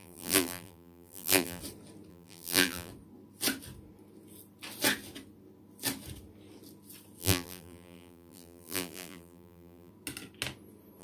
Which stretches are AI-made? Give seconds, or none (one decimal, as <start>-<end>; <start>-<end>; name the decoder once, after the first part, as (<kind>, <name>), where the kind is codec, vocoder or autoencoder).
0.0-1.6 (vocoder, BigVGAN v2); 2.1-2.9; 7.2-9.9